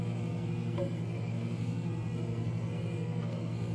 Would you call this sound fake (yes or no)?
yes